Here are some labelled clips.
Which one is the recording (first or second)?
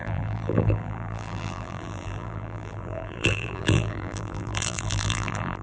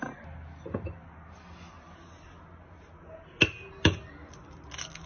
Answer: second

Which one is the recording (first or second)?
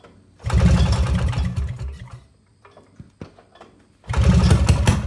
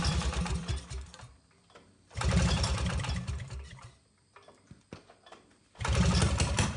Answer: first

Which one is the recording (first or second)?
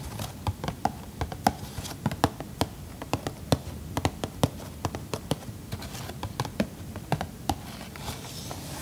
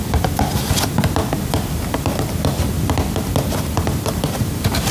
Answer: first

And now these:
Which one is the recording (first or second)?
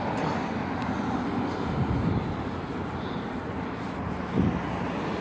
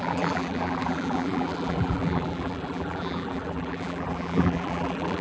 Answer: first